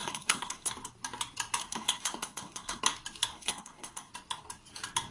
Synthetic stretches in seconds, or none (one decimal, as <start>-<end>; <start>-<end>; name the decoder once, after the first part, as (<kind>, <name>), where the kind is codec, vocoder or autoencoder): 0.0-0.7 (codec, SNAC); 1.6-2.8; 3.3-4.1